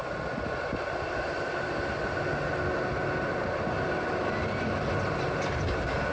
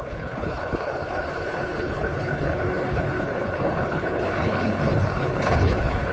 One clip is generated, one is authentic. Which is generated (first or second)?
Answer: second